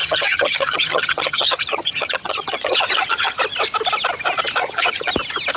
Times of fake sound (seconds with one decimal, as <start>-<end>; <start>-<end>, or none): 0.0-3.4; 4.6-5.1